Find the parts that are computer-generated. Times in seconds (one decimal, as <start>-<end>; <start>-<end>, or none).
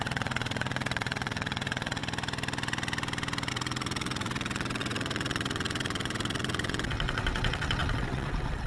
0.0-2.0; 3.5-8.7